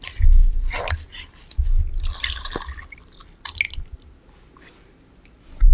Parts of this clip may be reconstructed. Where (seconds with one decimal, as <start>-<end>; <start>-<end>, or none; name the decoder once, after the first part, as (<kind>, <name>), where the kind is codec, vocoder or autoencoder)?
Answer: none

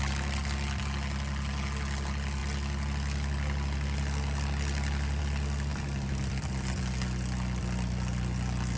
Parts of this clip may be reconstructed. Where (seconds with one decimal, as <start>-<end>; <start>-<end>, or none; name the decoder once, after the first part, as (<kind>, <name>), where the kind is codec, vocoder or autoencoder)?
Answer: 5.7-6.8 (vocoder, BigVGAN v2)

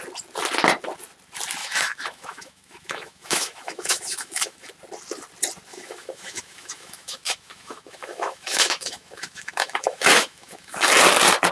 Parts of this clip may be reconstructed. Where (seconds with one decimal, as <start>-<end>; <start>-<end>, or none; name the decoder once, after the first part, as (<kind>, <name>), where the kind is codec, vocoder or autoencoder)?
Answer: 1.6-4.7 (autoencoder, DAC-VAE); 5.7-10.9

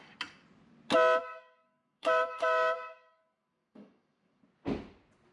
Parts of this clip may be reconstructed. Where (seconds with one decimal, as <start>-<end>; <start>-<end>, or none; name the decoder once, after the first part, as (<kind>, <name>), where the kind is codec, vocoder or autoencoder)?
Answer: 1.2-4.4 (codec, DAC)

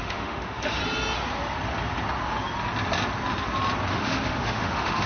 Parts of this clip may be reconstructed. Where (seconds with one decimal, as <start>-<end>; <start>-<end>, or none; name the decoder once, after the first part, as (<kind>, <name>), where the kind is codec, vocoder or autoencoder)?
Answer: 0.0-0.8 (autoencoder, DAC-VAE); 3.9-5.1

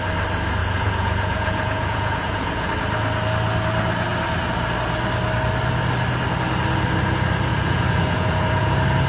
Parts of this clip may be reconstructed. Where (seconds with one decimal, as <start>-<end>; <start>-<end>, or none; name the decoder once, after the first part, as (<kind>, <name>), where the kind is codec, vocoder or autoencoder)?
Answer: 0.6-2.7 (vocoder, Vocos); 7.5-8.7

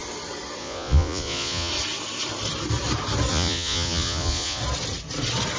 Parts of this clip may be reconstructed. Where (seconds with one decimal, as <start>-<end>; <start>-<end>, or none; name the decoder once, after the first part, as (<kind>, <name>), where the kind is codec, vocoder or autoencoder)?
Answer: 0.6-1.7 (vocoder, Vocos); 3.3-4.6